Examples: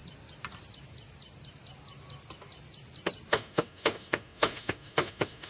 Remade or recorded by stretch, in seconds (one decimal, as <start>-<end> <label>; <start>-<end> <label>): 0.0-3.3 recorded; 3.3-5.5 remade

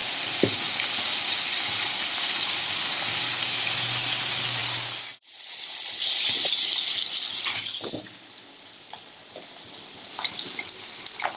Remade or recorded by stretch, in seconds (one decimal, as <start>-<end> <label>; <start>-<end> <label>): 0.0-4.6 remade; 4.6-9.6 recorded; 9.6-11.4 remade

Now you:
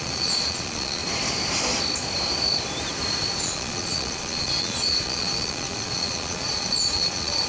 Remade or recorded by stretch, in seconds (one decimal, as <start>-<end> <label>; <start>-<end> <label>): 0.0-1.0 remade; 1.0-3.4 recorded; 3.4-7.5 remade